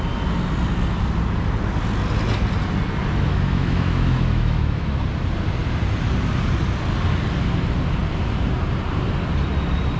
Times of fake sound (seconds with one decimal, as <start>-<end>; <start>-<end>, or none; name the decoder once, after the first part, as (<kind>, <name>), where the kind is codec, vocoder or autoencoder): 3.3-5.0 (autoencoder, DAC-VAE)